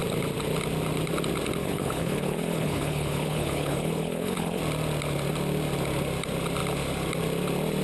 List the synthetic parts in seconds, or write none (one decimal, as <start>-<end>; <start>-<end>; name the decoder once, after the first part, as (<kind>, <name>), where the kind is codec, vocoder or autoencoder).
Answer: 1.6-4.6 (codec, HILCodec)